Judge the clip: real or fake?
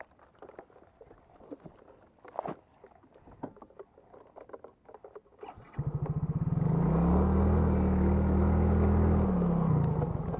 real